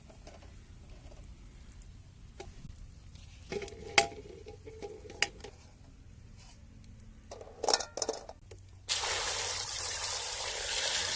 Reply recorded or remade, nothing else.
recorded